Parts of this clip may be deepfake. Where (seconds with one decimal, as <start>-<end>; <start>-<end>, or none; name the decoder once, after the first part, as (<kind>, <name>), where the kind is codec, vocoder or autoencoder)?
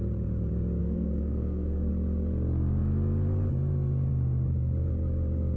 0.8-1.9 (codec, SNAC)